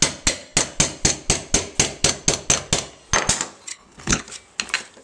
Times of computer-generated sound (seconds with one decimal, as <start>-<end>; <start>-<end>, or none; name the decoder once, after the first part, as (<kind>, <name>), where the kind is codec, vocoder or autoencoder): 3.7-4.2 (codec, HILCodec)